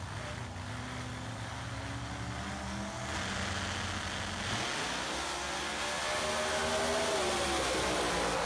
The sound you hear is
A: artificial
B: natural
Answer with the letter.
B